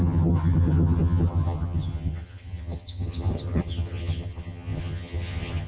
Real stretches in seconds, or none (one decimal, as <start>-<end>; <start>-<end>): none